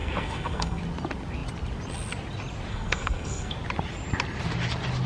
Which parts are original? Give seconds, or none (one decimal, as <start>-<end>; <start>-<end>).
0.8-2.7; 3.5-5.1